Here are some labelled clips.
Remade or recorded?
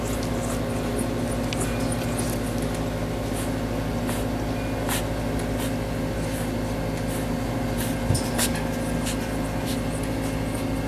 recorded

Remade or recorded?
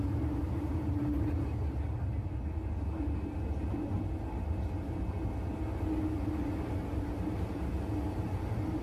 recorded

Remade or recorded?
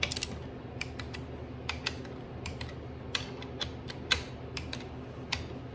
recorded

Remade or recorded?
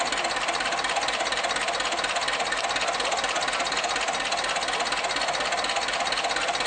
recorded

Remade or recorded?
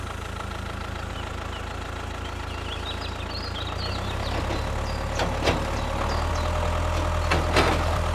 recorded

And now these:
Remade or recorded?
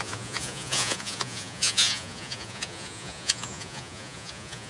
remade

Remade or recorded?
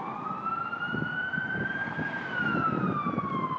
recorded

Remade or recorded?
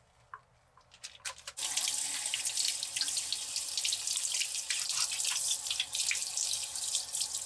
recorded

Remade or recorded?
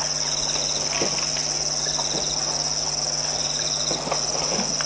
recorded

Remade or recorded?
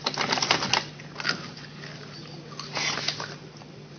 recorded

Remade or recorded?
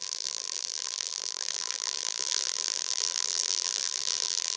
remade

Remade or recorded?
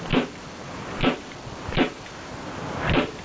recorded